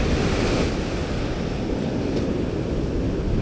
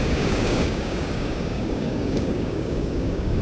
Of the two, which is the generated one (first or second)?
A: second